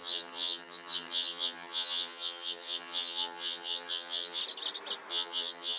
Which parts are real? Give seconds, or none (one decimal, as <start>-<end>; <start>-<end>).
4.4-5.1